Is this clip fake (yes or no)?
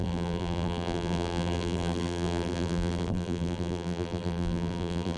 yes